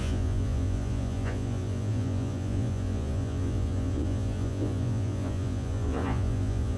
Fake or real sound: fake